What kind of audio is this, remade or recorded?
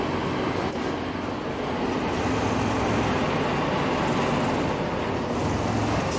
recorded